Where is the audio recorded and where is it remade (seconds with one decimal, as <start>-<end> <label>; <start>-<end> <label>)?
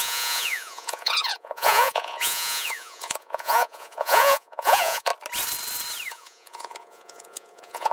0.0-5.1 remade; 5.1-6.1 recorded; 6.1-7.9 remade